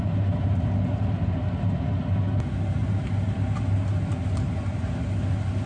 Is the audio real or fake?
real